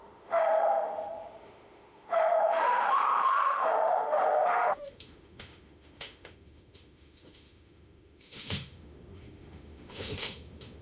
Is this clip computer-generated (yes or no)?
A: yes